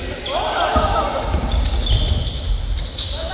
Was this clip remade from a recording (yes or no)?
no